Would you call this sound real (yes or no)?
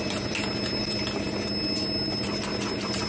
yes